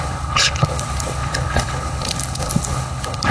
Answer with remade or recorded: remade